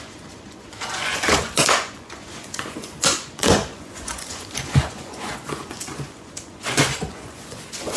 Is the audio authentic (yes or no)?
no